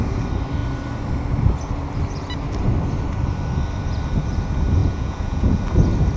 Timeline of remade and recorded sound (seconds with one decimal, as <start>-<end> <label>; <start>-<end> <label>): 0.0-4.8 recorded; 4.8-5.6 remade; 5.6-6.2 recorded